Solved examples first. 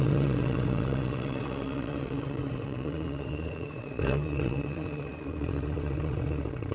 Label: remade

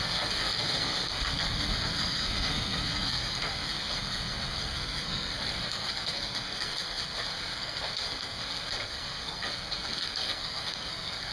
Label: remade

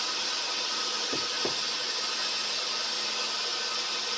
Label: recorded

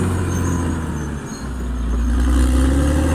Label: recorded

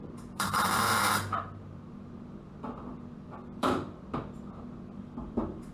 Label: remade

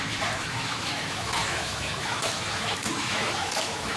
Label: remade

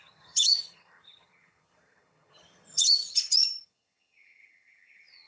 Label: remade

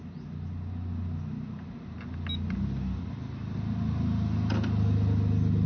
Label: recorded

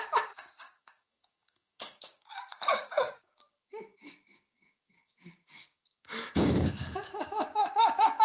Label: remade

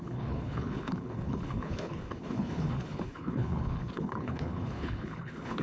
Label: remade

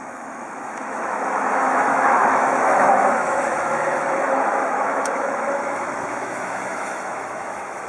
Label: remade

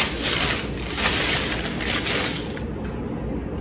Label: recorded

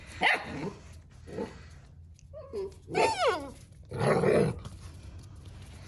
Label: recorded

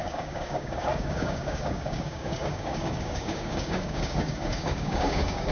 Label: remade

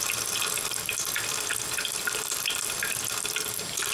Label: recorded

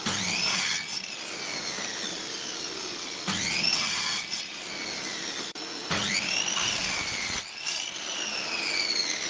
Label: recorded